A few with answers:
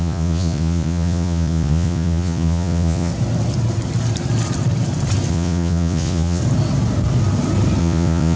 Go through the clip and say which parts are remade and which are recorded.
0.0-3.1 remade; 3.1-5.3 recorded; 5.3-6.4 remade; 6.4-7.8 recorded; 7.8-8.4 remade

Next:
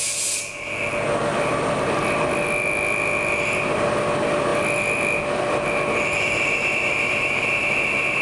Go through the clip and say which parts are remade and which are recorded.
0.0-8.2 recorded

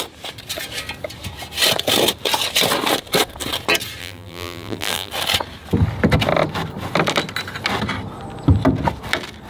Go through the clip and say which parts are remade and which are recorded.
0.0-4.0 recorded; 4.0-5.1 remade; 5.1-9.5 recorded

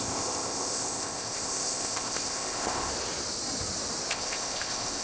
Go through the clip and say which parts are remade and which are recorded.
0.0-2.9 remade; 2.9-4.1 recorded; 4.1-5.0 remade